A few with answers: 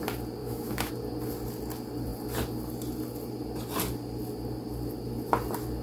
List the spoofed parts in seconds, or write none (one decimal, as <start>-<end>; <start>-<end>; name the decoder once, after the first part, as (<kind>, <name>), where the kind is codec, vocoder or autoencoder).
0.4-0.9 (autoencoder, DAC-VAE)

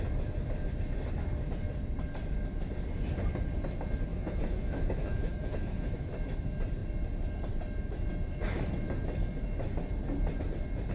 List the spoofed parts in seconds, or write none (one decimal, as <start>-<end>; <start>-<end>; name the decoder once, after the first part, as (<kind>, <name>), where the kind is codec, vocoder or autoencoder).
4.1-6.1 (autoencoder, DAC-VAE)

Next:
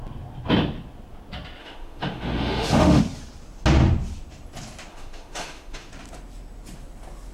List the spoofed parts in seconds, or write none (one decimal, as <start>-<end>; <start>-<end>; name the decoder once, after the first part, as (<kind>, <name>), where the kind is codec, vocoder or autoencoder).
1.6-3.0 (autoencoder, DAC-VAE); 4.9-5.9

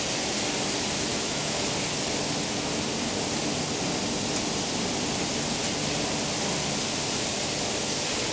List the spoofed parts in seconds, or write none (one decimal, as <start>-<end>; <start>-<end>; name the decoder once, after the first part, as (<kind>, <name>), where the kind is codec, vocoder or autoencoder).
1.1-1.7 (autoencoder, DAC-VAE)